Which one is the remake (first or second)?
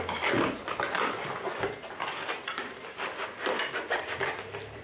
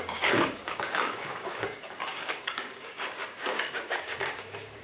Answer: second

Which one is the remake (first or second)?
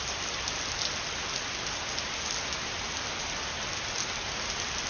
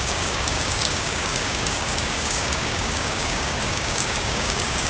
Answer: second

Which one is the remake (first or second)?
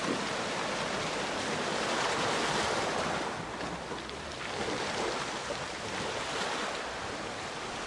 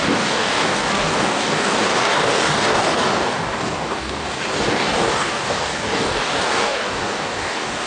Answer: second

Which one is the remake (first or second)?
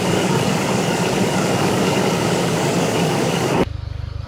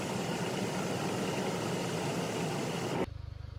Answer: first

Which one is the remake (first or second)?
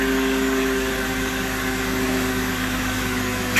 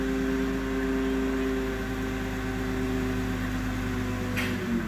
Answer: first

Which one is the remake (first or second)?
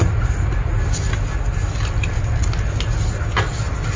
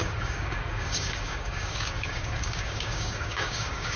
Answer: second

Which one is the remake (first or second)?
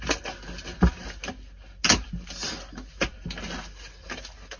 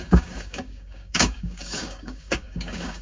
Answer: second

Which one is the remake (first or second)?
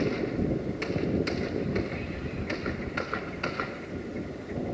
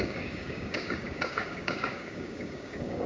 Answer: second